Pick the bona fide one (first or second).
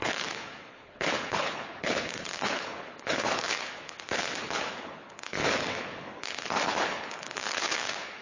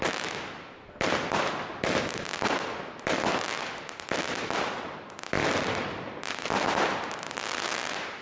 second